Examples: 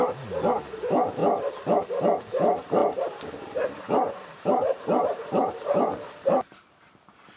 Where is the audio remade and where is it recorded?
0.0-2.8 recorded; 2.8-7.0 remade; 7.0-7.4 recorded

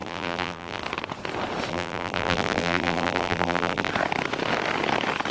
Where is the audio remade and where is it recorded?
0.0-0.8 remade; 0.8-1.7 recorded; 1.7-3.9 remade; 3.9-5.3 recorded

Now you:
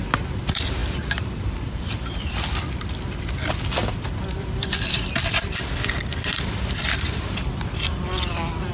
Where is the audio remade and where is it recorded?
0.0-0.8 recorded; 0.8-2.9 remade; 2.9-3.8 recorded; 3.8-8.7 remade